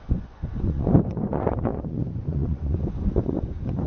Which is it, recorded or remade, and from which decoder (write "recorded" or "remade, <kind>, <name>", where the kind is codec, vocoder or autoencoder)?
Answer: remade, vocoder, Vocos